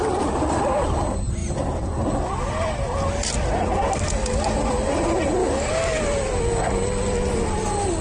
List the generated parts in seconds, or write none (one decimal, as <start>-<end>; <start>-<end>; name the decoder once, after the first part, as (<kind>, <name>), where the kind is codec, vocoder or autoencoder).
5.4-6.0 (codec, DAC)